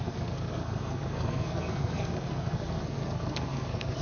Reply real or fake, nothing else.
fake